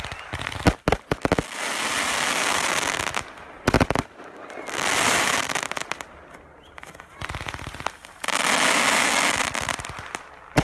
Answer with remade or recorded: recorded